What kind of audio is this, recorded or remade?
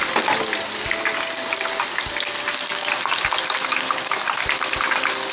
recorded